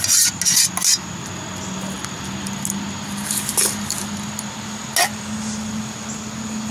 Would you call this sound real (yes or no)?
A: yes